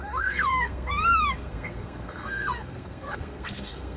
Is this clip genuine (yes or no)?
no